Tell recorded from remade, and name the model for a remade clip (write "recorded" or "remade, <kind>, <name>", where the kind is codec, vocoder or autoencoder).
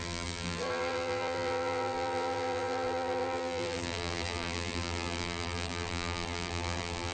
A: remade, vocoder, BigVGAN v2